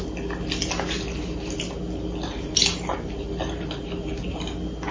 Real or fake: real